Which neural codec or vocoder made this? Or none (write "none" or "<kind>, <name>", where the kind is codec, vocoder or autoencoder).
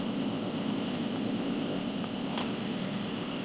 codec, ZipCodec